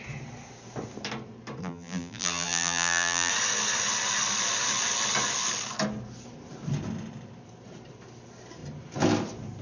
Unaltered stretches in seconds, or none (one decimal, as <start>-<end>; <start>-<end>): 0.0-1.6; 3.3-9.6